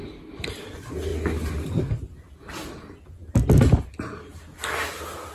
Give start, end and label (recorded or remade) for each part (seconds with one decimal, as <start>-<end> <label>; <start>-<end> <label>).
0.0-0.6 remade; 0.6-5.3 recorded